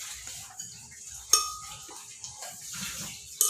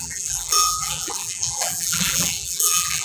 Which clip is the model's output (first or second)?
second